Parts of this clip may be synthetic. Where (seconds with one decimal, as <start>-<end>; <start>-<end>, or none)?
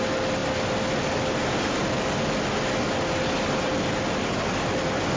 none